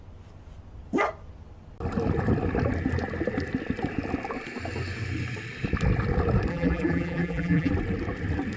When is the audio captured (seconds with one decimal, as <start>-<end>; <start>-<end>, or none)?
0.0-6.5; 7.7-8.6

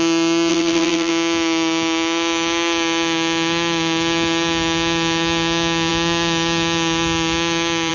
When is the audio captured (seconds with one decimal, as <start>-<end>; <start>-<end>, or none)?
0.0-0.5; 1.1-7.9

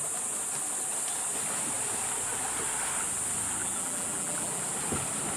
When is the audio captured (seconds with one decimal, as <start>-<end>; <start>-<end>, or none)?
0.0-3.6; 4.6-5.4

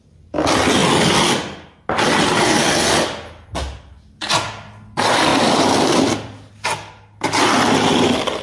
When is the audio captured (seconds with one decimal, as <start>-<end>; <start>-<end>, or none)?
0.0-5.3; 6.5-8.4